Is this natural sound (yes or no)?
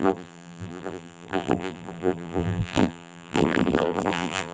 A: no